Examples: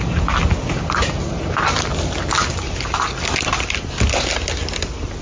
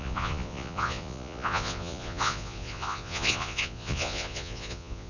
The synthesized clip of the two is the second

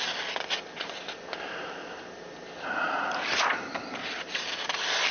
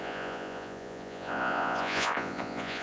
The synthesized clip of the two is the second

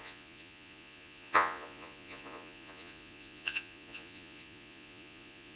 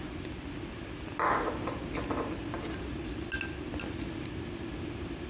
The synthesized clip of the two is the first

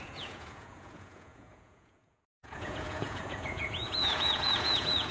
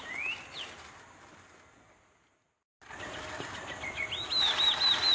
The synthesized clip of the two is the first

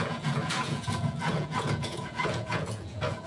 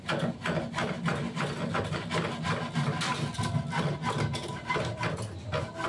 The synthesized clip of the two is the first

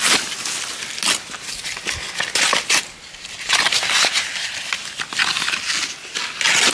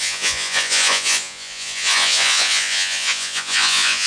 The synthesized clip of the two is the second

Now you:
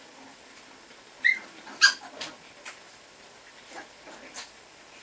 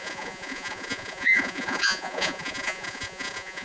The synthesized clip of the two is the second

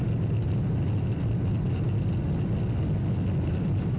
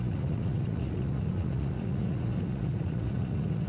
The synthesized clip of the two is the second